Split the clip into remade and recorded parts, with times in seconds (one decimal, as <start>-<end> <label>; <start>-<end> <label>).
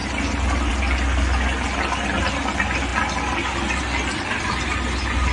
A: 0.0-5.3 recorded